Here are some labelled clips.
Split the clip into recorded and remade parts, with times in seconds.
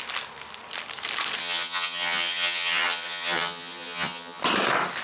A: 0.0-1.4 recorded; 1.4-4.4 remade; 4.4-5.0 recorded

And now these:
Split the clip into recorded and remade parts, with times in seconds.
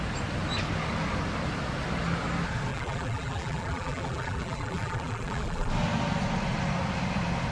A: 0.0-2.7 recorded; 2.7-5.7 remade; 5.7-7.5 recorded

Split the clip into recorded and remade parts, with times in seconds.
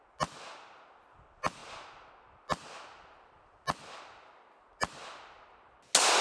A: 0.0-6.2 recorded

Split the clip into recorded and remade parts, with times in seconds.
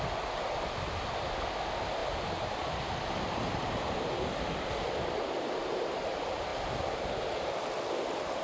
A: 0.0-8.4 recorded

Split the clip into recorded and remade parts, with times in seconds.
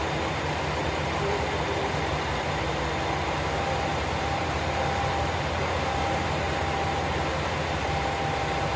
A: 0.0-0.8 recorded; 0.8-2.1 remade; 2.1-3.9 recorded; 3.9-7.1 remade; 7.1-8.8 recorded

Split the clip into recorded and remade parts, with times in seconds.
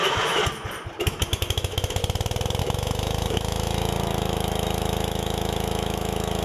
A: 0.0-0.4 remade; 0.4-1.0 recorded; 1.0-2.0 remade; 2.0-2.6 recorded; 2.6-6.4 remade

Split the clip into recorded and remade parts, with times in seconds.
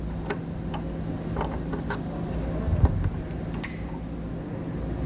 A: 0.0-5.1 recorded